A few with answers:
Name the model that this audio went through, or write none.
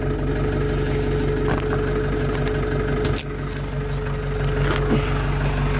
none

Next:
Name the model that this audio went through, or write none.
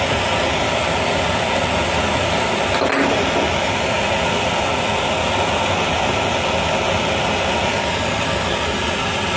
none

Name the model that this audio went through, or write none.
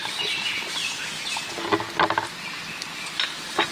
none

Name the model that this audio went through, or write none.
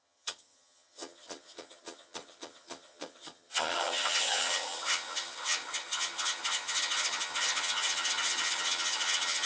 vocoder, HiFi-GAN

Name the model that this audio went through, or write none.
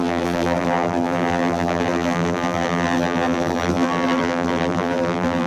vocoder, BigVGAN v2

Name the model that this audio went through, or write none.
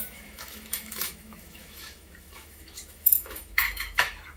autoencoder, DAC-VAE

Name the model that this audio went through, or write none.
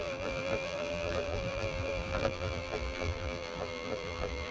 vocoder, BigVGAN v2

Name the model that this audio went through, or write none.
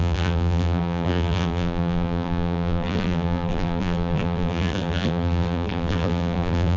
vocoder, BigVGAN v2